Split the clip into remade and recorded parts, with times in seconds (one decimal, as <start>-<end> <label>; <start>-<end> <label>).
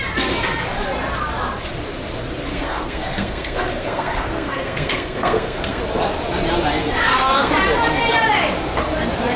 0.0-2.5 recorded; 2.5-5.8 remade; 5.8-6.8 recorded; 6.8-7.5 remade; 7.5-9.4 recorded